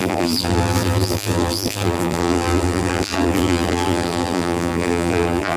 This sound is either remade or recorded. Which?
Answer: remade